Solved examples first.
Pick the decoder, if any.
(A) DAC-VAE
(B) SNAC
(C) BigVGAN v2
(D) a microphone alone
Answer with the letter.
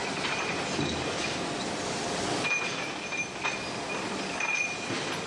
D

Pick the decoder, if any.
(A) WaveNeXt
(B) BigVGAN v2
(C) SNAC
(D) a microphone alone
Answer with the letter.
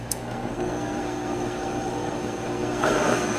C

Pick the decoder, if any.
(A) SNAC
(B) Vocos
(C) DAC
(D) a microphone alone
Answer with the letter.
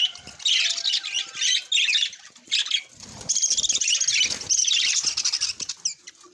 D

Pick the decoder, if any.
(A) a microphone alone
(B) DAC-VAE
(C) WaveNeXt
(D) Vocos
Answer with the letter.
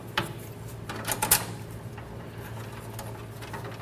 A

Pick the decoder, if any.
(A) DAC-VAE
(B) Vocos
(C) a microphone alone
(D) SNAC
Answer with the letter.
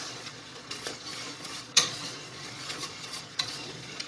B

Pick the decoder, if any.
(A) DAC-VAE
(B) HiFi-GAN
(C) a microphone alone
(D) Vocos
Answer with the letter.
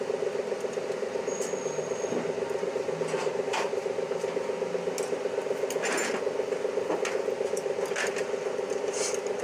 C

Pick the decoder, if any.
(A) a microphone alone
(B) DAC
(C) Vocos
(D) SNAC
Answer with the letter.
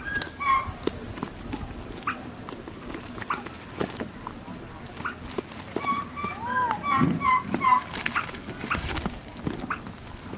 A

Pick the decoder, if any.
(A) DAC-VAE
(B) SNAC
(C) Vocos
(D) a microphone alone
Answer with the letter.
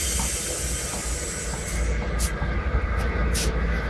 D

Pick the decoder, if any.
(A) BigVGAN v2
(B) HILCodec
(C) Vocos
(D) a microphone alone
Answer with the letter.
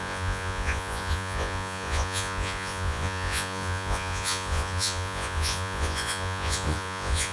C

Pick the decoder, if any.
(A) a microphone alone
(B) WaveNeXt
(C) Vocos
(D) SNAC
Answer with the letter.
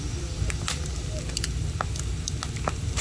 A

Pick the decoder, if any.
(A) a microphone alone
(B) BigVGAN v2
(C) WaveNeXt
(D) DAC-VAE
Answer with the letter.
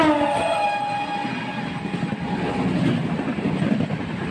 A